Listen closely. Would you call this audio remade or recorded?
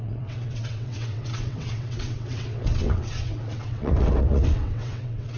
remade